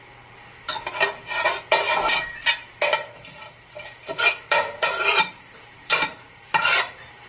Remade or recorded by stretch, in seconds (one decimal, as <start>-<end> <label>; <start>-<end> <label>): 0.0-4.1 recorded; 4.1-7.3 remade